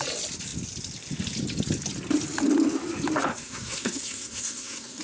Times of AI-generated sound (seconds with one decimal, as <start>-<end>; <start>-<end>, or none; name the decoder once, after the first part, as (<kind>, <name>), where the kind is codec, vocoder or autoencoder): 3.3-5.0 (codec, SNAC)